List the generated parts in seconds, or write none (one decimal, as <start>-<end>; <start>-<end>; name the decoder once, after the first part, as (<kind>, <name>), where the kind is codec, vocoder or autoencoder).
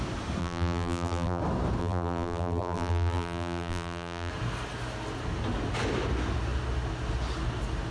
0.4-1.4 (vocoder, BigVGAN v2); 1.8-4.3